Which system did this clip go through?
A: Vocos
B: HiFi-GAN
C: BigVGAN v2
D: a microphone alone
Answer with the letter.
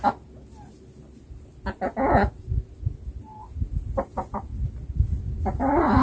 D